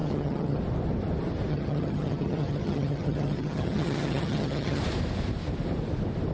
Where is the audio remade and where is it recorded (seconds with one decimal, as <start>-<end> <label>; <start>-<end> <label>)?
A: 0.0-0.6 remade; 0.6-1.5 recorded; 1.5-4.8 remade; 4.8-6.3 recorded